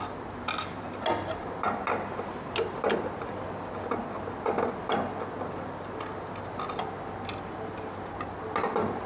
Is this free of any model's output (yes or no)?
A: yes